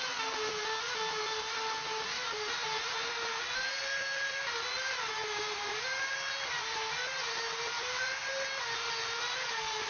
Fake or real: real